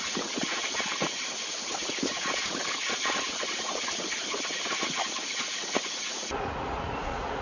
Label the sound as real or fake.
fake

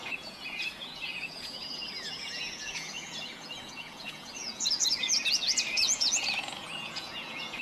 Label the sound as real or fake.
fake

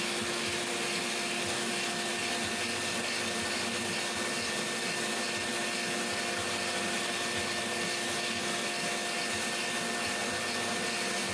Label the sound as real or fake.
real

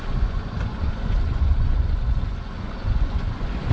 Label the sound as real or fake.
fake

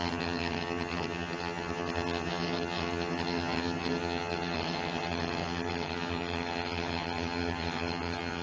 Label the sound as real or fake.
fake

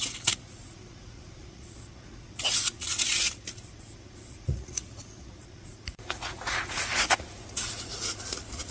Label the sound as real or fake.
fake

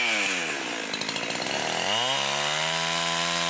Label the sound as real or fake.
real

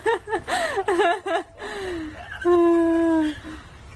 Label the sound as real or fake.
real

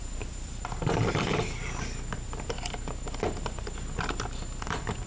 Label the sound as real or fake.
fake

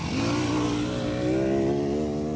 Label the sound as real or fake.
real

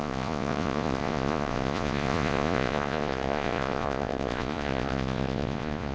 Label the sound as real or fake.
fake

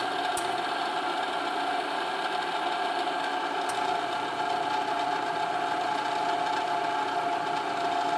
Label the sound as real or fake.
real